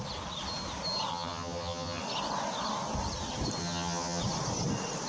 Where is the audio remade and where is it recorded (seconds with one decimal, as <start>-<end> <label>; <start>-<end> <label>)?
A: 0.0-1.1 recorded; 1.1-2.0 remade; 2.0-3.6 recorded; 3.6-4.2 remade; 4.2-5.1 recorded